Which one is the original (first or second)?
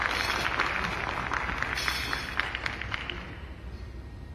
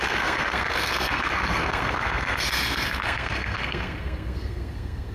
first